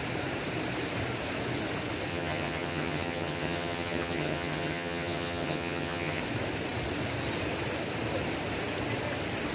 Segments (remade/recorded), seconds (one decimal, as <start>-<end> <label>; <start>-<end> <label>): 0.0-2.1 recorded; 2.1-6.2 remade; 6.2-9.5 recorded